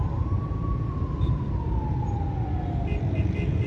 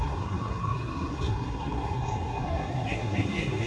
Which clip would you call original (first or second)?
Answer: first